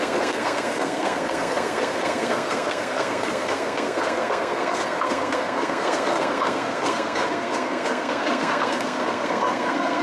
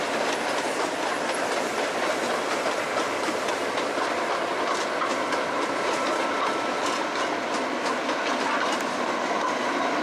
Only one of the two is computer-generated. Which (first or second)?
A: first